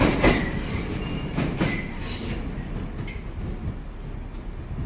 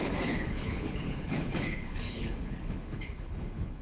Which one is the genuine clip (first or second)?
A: first